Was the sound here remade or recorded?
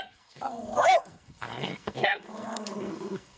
remade